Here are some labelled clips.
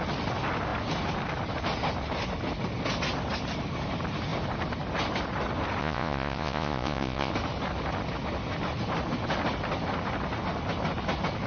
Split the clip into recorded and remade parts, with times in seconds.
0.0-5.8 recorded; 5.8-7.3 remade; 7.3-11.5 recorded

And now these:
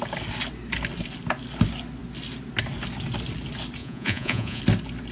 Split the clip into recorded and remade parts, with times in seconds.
0.0-3.8 recorded; 3.8-4.6 remade; 4.6-5.1 recorded

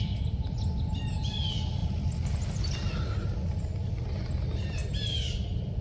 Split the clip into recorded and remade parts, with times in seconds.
0.0-5.8 recorded

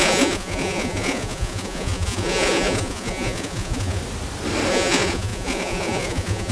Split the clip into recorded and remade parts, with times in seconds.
0.0-4.0 remade; 4.0-4.7 recorded; 4.7-6.5 remade

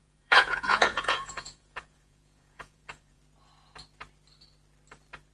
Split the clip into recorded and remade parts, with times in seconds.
0.0-3.2 remade; 3.2-5.3 recorded

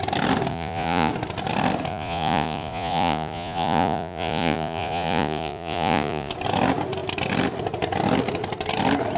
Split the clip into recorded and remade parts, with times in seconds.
0.0-0.5 recorded; 0.5-1.1 remade; 1.1-1.9 recorded; 1.9-6.3 remade; 6.3-9.2 recorded

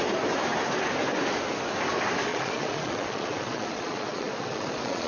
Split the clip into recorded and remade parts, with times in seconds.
0.0-2.3 recorded; 2.3-5.1 remade

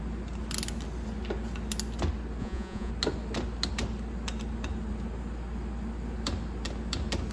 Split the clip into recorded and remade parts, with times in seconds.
0.0-2.4 recorded; 2.4-2.9 remade; 2.9-7.3 recorded